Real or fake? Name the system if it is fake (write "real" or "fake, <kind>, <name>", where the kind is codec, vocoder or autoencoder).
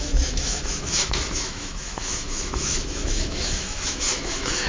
fake, autoencoder, DAC-VAE